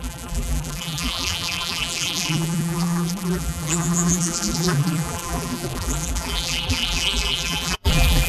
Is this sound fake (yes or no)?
yes